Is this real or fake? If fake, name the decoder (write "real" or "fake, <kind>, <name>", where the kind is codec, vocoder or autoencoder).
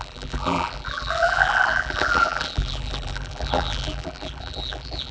fake, vocoder, BigVGAN v2